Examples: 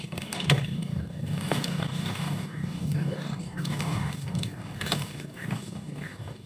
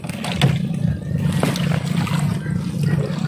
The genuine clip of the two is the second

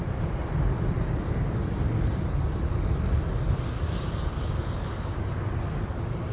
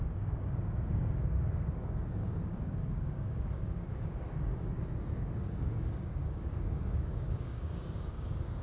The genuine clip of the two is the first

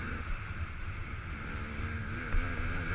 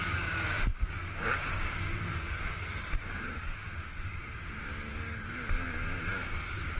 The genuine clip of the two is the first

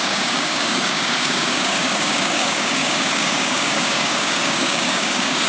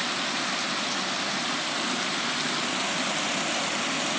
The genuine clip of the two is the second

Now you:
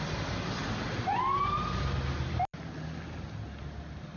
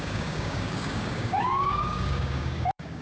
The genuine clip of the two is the first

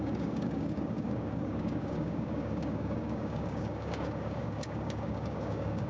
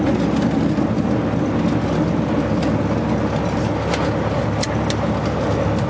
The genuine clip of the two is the second